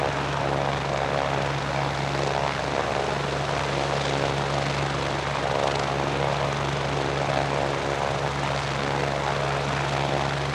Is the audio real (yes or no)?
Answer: yes